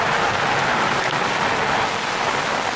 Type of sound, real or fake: real